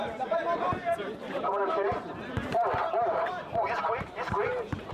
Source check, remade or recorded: remade